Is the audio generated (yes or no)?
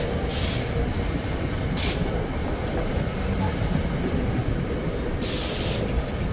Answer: no